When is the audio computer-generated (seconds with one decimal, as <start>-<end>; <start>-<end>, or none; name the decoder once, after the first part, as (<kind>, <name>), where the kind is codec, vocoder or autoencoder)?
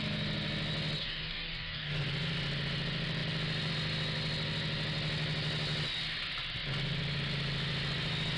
1.0-1.9 (codec, DAC)